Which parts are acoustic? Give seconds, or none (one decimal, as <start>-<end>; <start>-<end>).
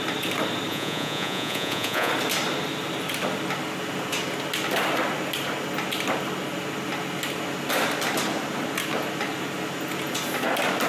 0.0-0.7; 2.1-10.9